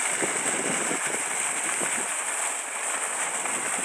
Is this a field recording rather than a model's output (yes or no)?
yes